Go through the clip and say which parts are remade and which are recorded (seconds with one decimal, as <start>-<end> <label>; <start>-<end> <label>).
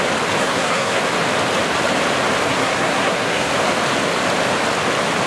0.0-0.4 recorded; 0.4-1.0 remade; 1.0-2.5 recorded; 2.5-3.5 remade; 3.5-5.3 recorded